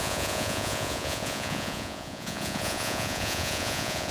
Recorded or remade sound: remade